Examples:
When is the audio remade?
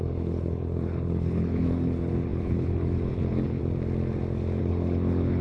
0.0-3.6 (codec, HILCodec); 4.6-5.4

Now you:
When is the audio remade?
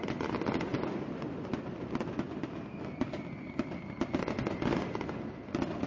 none